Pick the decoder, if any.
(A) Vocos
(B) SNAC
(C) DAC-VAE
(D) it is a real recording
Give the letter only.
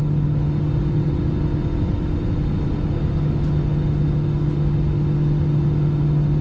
D